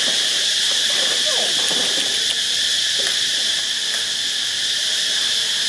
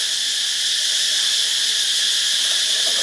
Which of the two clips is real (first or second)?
second